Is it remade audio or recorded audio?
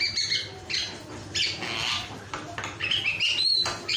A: recorded